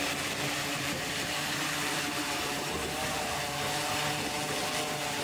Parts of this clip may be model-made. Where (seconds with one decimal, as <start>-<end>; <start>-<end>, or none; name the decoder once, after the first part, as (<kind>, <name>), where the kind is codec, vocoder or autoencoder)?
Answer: 0.6-3.7 (vocoder, BigVGAN v2)